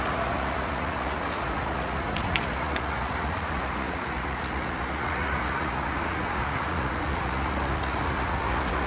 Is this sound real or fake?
fake